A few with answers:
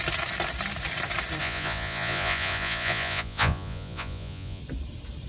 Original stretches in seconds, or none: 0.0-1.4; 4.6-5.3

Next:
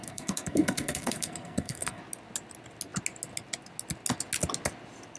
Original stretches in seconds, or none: 2.0-5.2

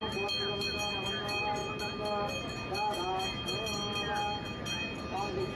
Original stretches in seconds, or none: 0.0-5.6